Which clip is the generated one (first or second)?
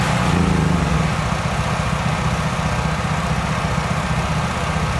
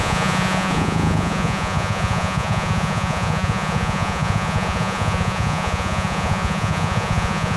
second